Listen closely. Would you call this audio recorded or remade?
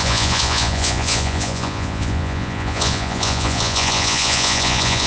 remade